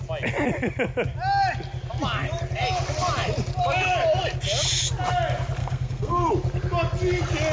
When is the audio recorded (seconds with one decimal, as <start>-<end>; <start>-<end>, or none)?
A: 0.0-5.6; 6.3-7.5